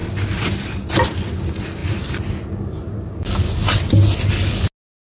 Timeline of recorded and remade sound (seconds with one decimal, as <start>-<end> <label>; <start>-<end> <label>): 0.0-5.0 recorded